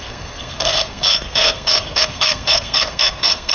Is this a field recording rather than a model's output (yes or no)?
no